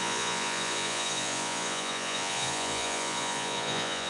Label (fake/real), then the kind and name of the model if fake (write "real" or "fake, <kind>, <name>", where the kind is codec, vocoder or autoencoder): fake, vocoder, Vocos